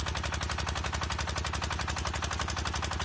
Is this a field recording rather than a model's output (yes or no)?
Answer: yes